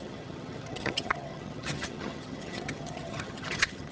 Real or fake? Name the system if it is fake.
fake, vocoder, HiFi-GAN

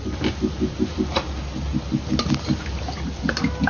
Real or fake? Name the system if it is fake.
real